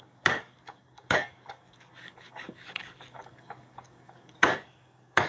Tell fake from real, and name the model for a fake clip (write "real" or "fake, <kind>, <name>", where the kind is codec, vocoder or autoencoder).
fake, codec, DAC